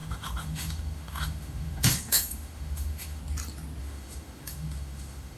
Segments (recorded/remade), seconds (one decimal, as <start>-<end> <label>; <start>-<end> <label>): 0.0-3.2 remade; 3.2-3.8 recorded; 3.8-5.4 remade